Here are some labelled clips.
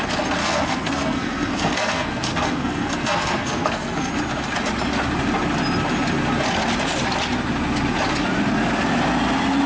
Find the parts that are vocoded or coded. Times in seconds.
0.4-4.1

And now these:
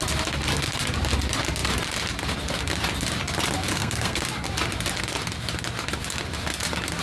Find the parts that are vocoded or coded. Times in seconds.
3.7-4.2

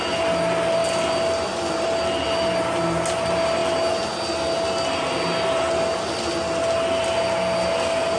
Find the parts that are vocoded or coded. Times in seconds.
none